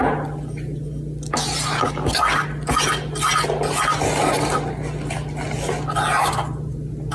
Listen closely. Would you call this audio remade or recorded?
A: recorded